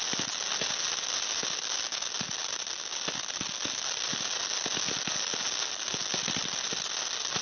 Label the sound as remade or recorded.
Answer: recorded